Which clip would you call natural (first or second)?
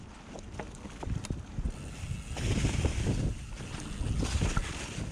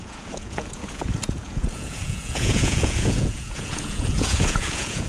first